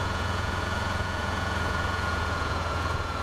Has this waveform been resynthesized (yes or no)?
yes